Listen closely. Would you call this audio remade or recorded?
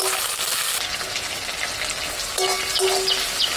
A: recorded